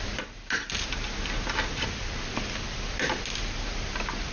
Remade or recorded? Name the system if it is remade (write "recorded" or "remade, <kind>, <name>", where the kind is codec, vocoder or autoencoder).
recorded